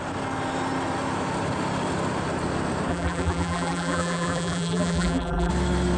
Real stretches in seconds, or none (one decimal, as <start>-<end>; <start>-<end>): 0.0-2.9; 5.5-6.0